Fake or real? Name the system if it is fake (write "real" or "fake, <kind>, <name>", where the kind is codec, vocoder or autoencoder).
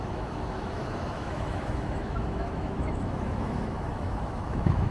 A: fake, autoencoder, DAC-VAE